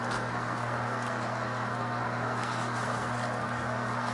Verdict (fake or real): fake